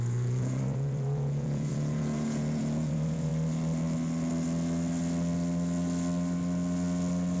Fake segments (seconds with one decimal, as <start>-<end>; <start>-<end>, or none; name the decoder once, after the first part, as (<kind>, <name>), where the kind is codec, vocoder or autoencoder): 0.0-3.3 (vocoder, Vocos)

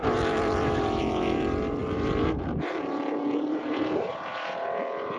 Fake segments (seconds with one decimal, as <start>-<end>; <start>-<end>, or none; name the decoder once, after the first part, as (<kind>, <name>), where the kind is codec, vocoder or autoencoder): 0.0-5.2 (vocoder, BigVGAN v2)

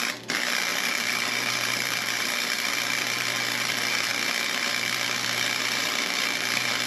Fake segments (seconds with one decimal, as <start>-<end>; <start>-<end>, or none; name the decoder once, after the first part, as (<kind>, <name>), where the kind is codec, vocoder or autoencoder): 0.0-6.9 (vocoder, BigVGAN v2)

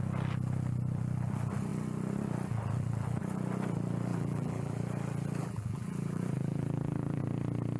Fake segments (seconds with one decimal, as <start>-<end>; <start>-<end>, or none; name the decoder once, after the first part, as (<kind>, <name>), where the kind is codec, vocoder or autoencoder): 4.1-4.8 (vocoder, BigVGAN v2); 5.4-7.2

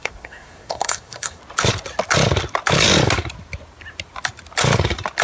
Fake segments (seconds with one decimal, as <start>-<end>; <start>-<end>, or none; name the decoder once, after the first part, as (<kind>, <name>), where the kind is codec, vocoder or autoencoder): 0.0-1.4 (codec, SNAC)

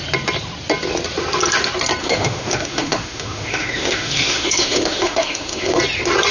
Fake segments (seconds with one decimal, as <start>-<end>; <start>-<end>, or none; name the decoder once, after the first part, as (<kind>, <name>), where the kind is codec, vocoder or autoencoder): 2.0-5.8 (autoencoder, DAC-VAE)